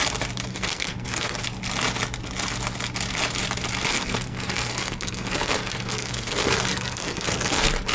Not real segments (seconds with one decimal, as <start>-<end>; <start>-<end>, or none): 0.5-1.4; 3.9-7.9